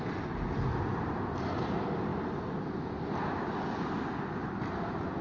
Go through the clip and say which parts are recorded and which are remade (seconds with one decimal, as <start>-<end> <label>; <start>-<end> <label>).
0.0-5.2 recorded